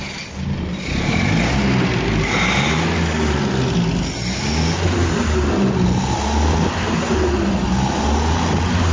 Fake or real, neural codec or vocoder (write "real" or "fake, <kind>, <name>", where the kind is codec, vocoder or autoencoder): real